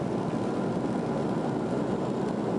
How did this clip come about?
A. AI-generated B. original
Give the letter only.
B